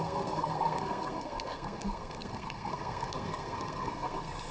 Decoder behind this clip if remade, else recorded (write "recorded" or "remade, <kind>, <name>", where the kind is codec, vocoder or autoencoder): remade, codec, SNAC